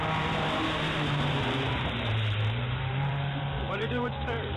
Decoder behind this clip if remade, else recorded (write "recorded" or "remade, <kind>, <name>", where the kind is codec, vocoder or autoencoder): remade, vocoder, BigVGAN v2